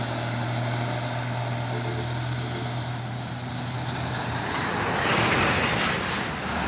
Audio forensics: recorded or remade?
recorded